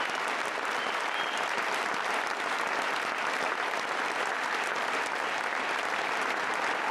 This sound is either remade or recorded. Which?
recorded